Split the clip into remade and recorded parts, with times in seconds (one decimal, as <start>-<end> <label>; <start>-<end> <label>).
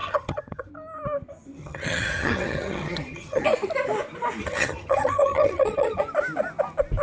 0.0-0.7 remade; 0.7-1.6 recorded; 1.6-3.4 remade; 3.4-4.4 recorded; 4.4-6.0 remade; 6.0-7.0 recorded